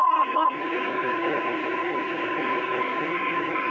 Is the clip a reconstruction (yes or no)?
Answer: yes